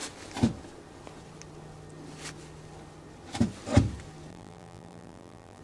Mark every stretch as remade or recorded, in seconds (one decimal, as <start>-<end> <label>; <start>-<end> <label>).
0.0-4.3 recorded; 4.3-5.6 remade